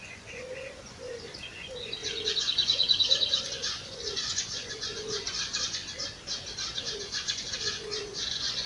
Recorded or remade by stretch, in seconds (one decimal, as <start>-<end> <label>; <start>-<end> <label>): 0.0-5.8 remade; 5.8-6.8 recorded; 6.8-8.7 remade